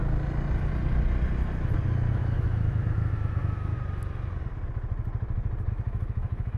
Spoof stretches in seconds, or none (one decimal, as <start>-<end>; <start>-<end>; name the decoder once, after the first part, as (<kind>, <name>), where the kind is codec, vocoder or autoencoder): 2.1-3.7 (autoencoder, DAC-VAE); 5.7-6.6